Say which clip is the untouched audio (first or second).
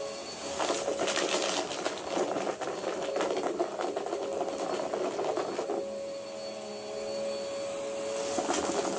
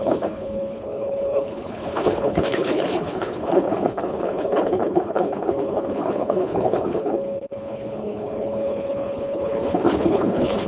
first